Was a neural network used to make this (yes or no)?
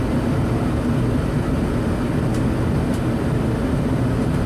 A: no